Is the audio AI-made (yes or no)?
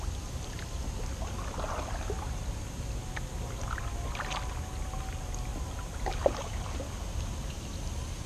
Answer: no